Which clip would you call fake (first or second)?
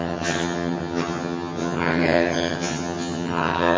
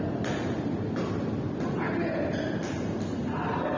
first